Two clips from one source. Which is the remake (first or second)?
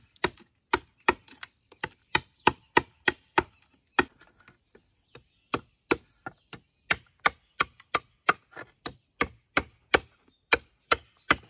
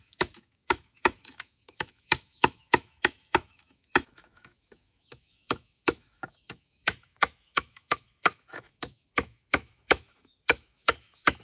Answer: second